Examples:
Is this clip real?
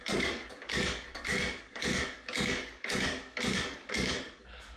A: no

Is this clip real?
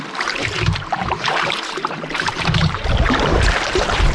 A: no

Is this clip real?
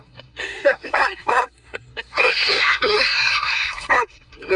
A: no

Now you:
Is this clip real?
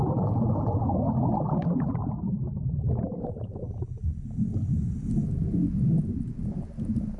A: yes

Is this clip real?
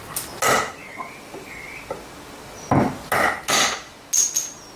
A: yes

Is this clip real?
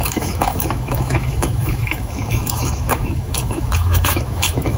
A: no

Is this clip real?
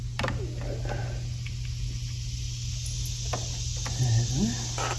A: yes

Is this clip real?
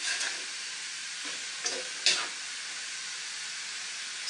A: yes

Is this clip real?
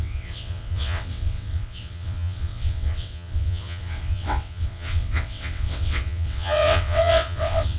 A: no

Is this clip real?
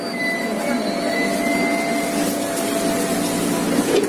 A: yes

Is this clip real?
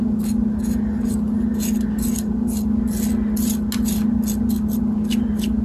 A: yes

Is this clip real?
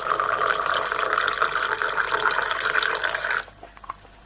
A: yes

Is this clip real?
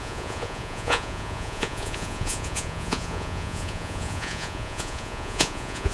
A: no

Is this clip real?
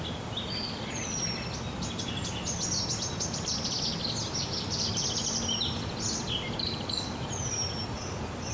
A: yes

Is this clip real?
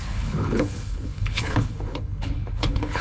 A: no